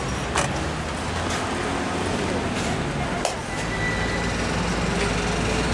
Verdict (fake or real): real